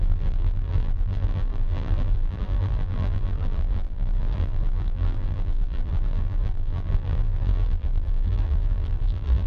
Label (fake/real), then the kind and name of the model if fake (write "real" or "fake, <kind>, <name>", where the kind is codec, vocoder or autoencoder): fake, vocoder, BigVGAN v2